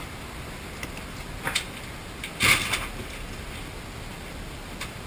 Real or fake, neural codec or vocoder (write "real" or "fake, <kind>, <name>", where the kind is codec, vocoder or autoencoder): real